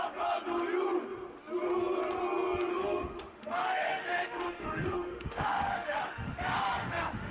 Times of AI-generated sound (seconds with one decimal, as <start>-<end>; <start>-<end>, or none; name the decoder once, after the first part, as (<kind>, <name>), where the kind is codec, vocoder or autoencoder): 2.7-7.3 (autoencoder, DAC-VAE)